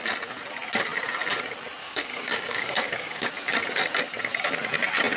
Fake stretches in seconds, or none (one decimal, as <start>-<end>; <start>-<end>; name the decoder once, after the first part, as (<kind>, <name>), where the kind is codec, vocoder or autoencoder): 1.8-3.3 (codec, DAC)